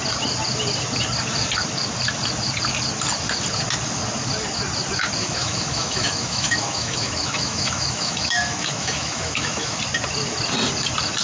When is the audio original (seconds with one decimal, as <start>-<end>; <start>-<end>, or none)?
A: 0.0-5.2; 9.8-11.2